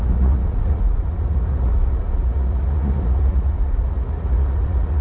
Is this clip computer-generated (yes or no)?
yes